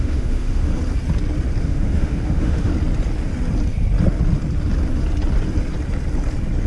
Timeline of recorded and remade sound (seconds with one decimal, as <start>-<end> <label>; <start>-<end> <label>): 0.0-0.7 remade; 0.7-1.6 recorded; 1.6-2.7 remade; 2.7-6.7 recorded